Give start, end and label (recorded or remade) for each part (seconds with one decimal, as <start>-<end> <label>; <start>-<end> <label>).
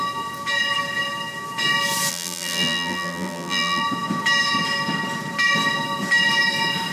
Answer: 0.0-2.1 recorded; 2.1-3.8 remade; 3.8-6.9 recorded